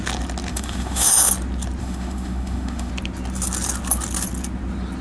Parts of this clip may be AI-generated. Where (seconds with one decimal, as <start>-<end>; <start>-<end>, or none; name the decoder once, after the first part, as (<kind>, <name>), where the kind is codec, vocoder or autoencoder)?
0.5-1.3 (autoencoder, DAC-VAE); 1.8-2.9